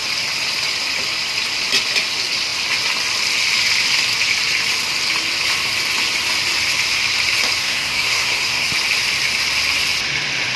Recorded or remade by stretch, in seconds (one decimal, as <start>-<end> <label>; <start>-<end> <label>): 0.0-7.6 recorded; 7.6-8.7 remade; 8.7-10.6 recorded